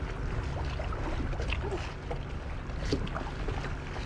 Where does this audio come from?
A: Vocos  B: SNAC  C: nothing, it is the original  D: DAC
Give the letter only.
C